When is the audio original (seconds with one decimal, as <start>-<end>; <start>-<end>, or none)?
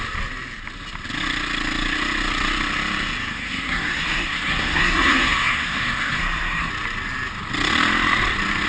0.0-3.3; 6.7-8.7